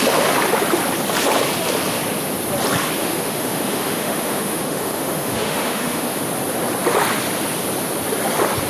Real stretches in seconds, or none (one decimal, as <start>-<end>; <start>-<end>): 0.0-3.0; 6.2-8.7